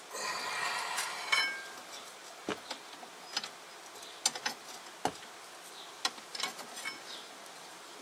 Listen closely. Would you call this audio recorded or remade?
recorded